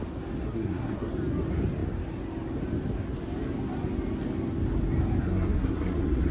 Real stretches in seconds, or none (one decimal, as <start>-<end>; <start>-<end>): 0.0-0.4; 1.1-5.2